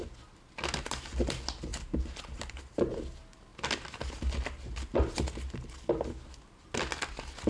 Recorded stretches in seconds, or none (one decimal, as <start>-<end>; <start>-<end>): 0.0-1.7; 2.6-7.5